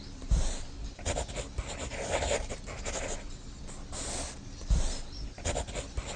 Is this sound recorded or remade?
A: recorded